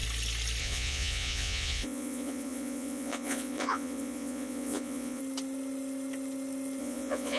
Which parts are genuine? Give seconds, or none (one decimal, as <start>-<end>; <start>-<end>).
0.0-0.6; 5.2-6.8